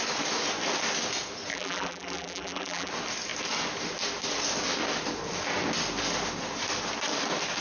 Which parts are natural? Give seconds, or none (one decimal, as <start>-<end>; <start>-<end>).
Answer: 0.0-1.5; 2.9-7.6

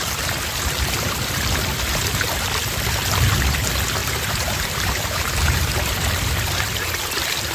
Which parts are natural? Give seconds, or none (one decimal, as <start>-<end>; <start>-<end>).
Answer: 0.0-4.0; 5.7-7.5

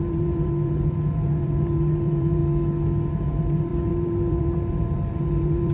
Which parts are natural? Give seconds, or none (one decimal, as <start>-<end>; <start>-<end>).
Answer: 2.4-3.1